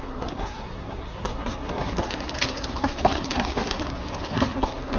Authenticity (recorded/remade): remade